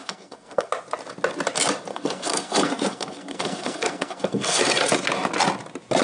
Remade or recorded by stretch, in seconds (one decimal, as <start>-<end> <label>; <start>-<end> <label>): 0.0-0.7 remade; 0.7-1.9 recorded; 1.9-4.6 remade; 4.6-6.0 recorded